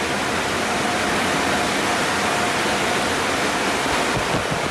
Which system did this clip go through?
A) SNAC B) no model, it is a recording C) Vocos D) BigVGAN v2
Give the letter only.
B